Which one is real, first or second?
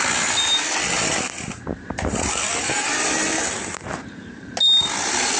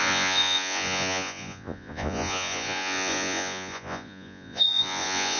first